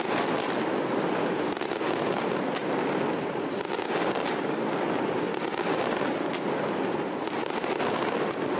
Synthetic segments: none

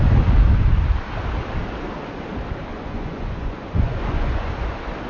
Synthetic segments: 2.7-4.5 (vocoder, Vocos)

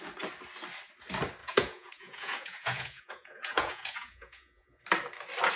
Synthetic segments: 1.4-4.8 (vocoder, Vocos)

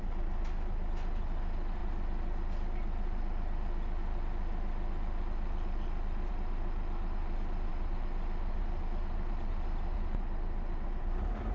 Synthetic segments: 0.0-1.8 (vocoder, BigVGAN v2); 6.3-11.5

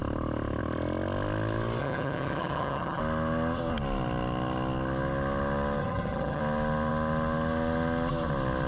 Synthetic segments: 1.8-3.0 (vocoder, HiFi-GAN); 5.8-6.4

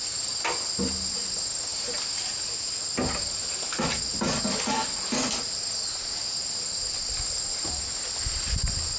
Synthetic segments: none

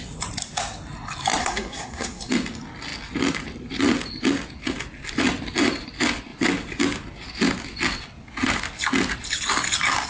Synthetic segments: 1.4-2.3 (codec, SNAC)